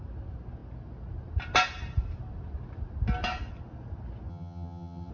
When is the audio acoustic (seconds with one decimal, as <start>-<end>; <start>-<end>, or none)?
0.0-4.3

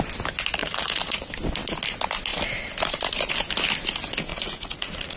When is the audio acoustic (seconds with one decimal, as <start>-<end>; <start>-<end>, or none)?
0.0-0.6; 1.3-4.3

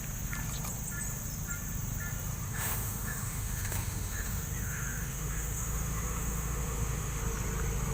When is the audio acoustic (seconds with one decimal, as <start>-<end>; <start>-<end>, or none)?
0.0-2.5; 7.2-7.9

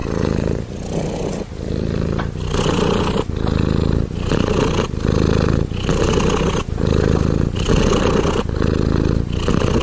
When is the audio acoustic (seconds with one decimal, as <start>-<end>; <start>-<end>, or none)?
0.0-9.8

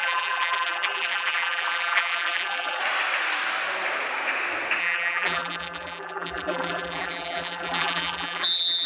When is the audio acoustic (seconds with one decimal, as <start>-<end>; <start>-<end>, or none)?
2.8-4.8

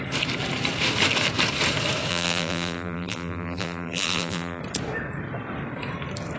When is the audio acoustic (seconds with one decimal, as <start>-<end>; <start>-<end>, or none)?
0.0-2.1; 4.6-6.4

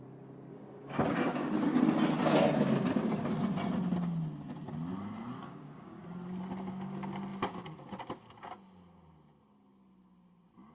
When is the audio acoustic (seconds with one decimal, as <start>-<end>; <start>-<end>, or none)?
0.0-0.5; 1.8-5.4; 6.0-10.7

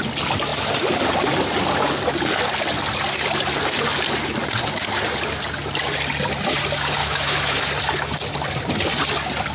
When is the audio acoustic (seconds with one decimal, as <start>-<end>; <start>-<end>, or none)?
0.0-7.0; 7.6-9.5